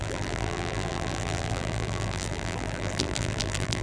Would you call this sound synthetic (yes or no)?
yes